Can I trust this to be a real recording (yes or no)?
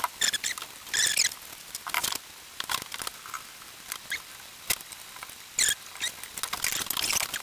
yes